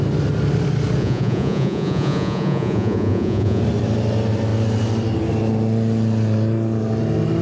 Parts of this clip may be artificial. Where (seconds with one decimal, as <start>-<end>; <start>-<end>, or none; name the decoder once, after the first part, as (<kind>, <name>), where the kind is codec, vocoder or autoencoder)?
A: 1.0-3.6 (vocoder, Vocos)